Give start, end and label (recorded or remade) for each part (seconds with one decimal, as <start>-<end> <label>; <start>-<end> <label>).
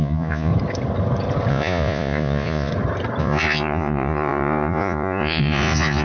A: 0.0-0.5 remade; 0.5-1.5 recorded; 1.5-2.7 remade; 2.7-3.2 recorded; 3.2-6.0 remade